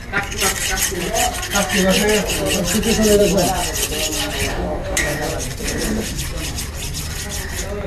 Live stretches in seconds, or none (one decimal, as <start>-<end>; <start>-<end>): 0.0-4.5; 5.3-7.9

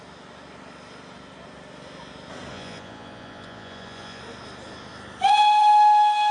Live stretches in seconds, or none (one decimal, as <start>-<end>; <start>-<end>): 0.0-2.5; 4.2-6.3

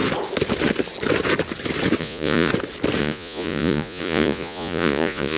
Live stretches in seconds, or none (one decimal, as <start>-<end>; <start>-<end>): 0.0-2.0; 2.5-3.0